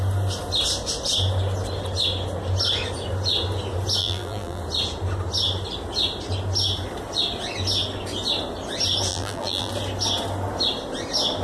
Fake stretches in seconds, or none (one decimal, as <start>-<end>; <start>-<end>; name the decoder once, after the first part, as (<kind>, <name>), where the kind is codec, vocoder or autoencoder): 4.0-4.6 (vocoder, BigVGAN v2); 9.1-9.7